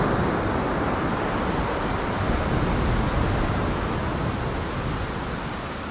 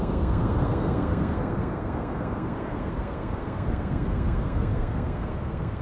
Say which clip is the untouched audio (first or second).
first